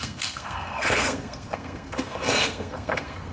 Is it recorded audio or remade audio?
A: remade